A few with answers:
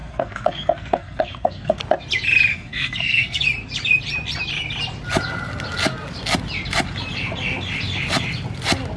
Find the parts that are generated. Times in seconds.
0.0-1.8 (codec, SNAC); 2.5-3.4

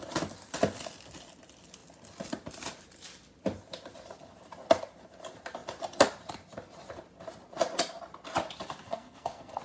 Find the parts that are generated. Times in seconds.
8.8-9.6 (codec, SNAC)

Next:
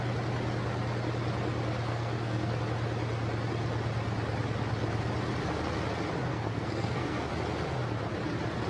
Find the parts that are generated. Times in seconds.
1.9-2.6 (codec, SNAC); 6.3-7.3